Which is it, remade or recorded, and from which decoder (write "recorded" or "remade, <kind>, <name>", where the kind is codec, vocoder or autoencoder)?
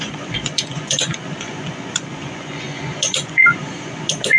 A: remade, vocoder, Vocos